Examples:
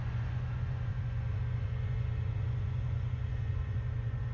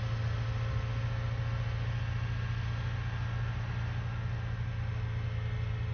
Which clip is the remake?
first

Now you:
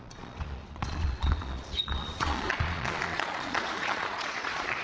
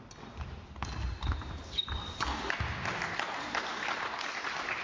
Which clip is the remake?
first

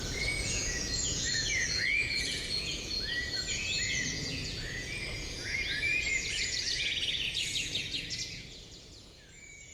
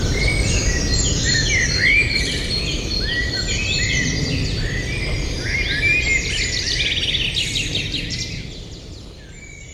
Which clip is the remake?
first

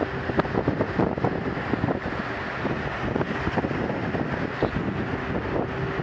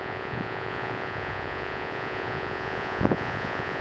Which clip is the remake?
second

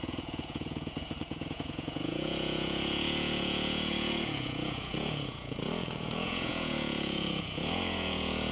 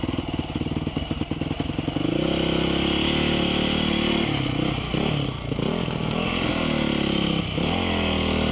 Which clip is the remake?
first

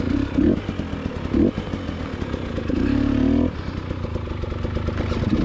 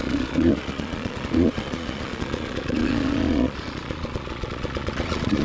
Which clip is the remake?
second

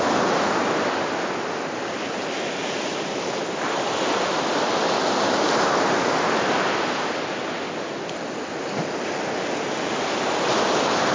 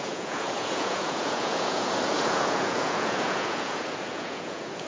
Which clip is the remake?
second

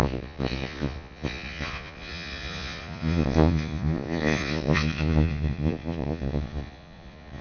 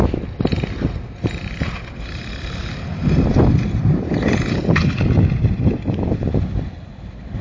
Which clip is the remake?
first